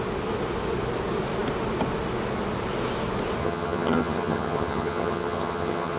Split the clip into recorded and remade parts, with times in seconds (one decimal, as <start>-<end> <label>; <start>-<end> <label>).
0.0-3.4 recorded; 3.4-6.0 remade